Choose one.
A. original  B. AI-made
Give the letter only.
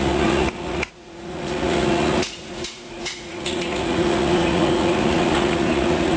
B